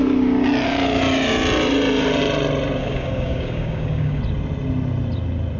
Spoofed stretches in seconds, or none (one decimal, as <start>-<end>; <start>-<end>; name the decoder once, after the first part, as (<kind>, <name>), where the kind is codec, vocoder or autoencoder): 2.8-4.2 (codec, DAC)